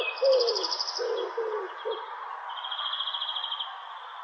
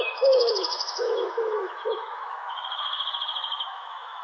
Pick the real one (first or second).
first